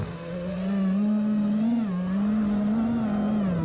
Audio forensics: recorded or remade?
recorded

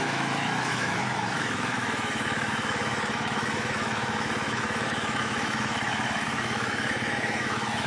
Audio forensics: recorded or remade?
remade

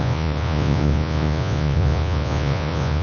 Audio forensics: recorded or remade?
remade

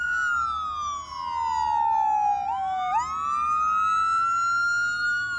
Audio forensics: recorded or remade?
recorded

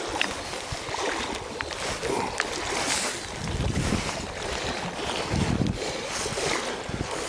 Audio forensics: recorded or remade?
recorded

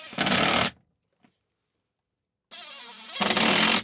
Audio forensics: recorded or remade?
recorded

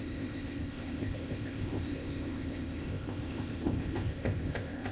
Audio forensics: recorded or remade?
remade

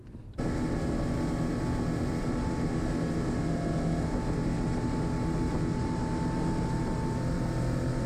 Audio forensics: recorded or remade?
recorded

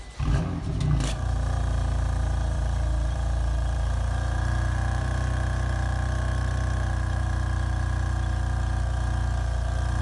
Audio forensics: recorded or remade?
remade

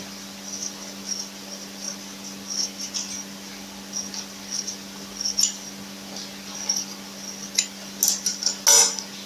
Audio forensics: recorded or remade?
recorded